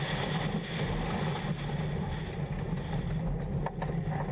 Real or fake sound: real